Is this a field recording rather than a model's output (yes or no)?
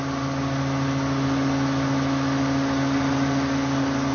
yes